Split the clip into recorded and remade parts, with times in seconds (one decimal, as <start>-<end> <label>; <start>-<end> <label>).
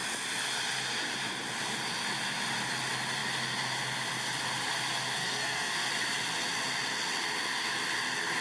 0.0-5.2 recorded; 5.2-5.9 remade; 5.9-8.4 recorded